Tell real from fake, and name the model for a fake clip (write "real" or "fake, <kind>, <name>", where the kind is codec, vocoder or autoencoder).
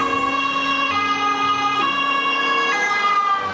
real